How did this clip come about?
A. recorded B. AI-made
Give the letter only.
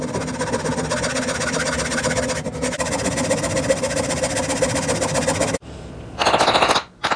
A